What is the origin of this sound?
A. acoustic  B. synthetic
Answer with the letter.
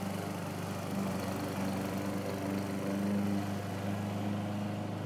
A